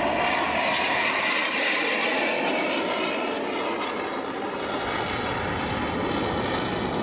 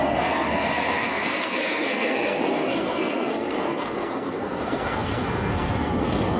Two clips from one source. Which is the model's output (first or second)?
second